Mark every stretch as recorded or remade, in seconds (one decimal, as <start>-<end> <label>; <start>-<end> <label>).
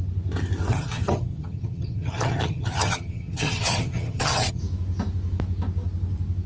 0.0-0.7 recorded; 0.7-4.6 remade; 4.6-6.5 recorded